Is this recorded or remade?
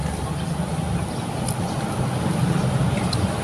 recorded